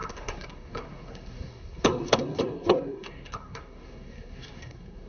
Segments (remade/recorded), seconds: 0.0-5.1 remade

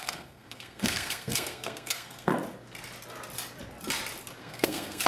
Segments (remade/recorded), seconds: 0.0-2.3 remade; 2.3-4.4 recorded; 4.4-5.1 remade

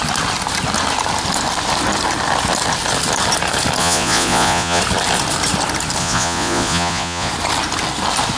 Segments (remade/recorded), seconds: 0.0-3.8 recorded; 3.8-4.8 remade; 4.8-6.0 recorded; 6.0-7.3 remade; 7.3-8.4 recorded

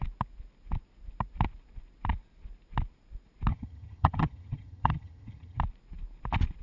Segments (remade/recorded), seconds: 0.0-3.5 recorded; 3.5-5.6 remade; 5.6-6.6 recorded

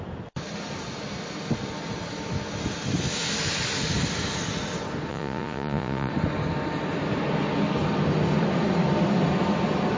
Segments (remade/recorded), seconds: 0.0-5.1 recorded; 5.1-6.1 remade; 6.1-10.0 recorded